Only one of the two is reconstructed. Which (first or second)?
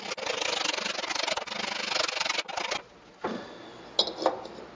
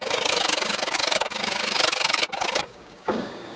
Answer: second